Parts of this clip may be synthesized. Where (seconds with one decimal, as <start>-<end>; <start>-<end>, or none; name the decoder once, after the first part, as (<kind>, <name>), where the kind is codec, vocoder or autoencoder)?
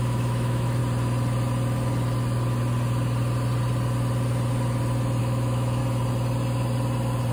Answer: 0.0-0.8 (autoencoder, DAC-VAE); 5.2-5.8